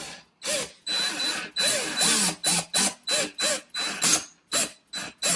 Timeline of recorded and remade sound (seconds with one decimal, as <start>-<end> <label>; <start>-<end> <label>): 0.0-5.4 recorded